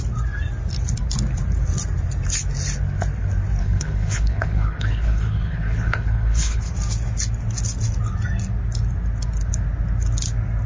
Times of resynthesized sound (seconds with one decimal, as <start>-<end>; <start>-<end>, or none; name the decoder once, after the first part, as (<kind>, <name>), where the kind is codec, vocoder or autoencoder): 3.6-6.7 (codec, HILCodec)